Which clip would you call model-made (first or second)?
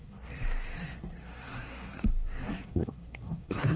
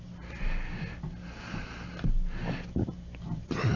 first